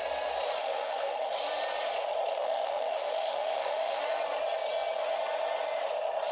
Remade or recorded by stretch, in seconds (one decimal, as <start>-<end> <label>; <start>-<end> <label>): 0.0-0.6 recorded; 0.6-1.3 remade; 1.3-2.3 recorded; 2.3-4.0 remade; 4.0-6.3 recorded